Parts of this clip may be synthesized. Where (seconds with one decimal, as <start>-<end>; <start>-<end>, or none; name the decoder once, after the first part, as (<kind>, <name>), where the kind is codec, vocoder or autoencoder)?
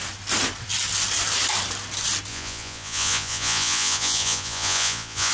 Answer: 2.3-5.3 (vocoder, Vocos)